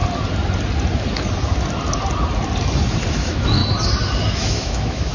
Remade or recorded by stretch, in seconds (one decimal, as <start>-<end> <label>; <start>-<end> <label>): 0.0-3.1 recorded; 3.1-3.6 remade; 3.6-4.3 recorded; 4.3-5.1 remade